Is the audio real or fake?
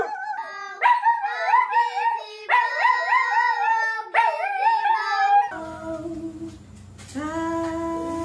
real